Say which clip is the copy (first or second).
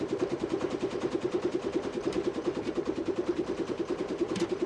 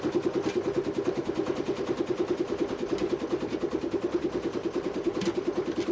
first